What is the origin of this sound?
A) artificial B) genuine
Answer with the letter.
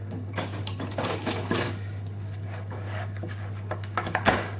A